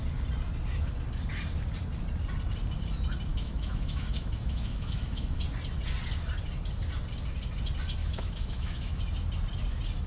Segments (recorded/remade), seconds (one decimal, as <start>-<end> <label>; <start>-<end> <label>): 0.0-3.3 recorded; 3.3-5.4 remade; 5.4-8.0 recorded; 8.0-9.0 remade; 9.0-10.1 recorded